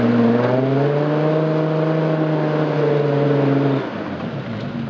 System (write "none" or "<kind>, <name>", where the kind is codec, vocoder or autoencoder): none